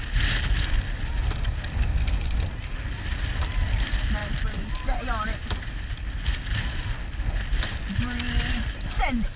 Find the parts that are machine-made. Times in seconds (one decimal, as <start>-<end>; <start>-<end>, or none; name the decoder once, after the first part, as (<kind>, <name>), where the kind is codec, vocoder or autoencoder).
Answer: none